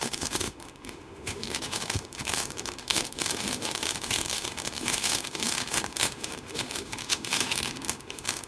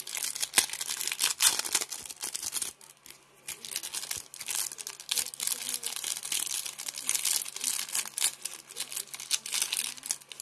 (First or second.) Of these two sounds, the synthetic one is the first